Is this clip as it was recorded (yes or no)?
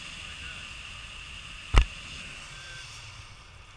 yes